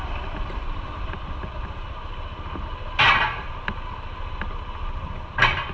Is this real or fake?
real